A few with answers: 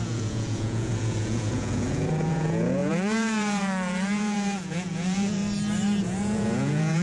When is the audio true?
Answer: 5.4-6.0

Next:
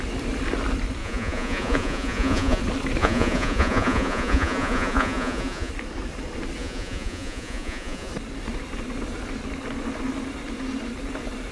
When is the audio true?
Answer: 0.0-1.0; 2.6-3.0; 5.7-6.6; 8.1-11.5

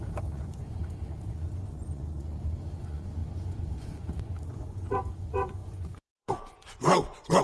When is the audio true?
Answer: none

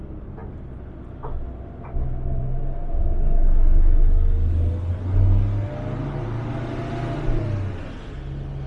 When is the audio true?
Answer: 0.0-8.7

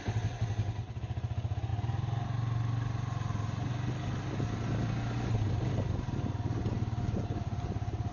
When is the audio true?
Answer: 0.0-8.1

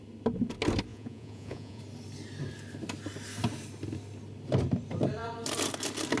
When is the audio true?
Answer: 0.0-0.9; 1.8-6.2

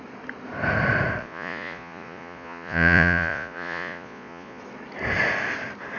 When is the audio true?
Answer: 0.0-1.2; 4.6-6.0